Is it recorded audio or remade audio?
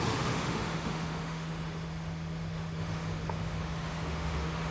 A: remade